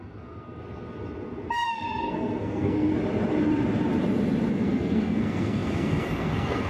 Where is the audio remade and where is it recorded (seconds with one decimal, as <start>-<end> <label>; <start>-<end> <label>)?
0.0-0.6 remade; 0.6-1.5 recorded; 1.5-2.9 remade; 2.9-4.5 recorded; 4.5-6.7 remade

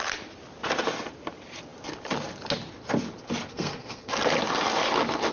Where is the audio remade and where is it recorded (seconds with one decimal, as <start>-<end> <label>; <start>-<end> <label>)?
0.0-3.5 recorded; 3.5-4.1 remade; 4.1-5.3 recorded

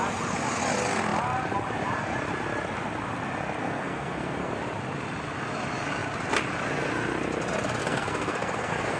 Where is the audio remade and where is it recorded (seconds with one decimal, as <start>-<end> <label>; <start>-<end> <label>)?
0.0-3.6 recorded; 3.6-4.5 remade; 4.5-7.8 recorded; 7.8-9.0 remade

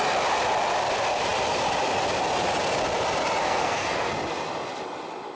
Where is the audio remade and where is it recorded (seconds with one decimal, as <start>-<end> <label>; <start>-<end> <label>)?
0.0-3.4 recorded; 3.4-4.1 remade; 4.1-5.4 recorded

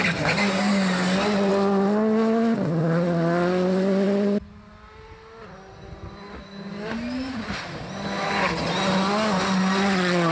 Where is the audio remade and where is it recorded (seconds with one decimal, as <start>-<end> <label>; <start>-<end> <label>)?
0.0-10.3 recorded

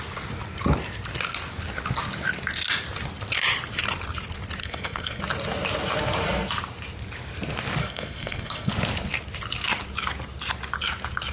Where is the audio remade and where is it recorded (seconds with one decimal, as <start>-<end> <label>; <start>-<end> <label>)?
0.0-4.6 recorded; 4.6-5.2 remade; 5.2-7.8 recorded; 7.8-8.7 remade; 8.7-11.3 recorded

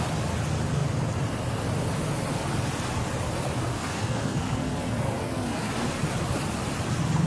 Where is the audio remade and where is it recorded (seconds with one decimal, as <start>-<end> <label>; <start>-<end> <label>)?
0.0-3.7 recorded; 3.7-5.7 remade; 5.7-7.3 recorded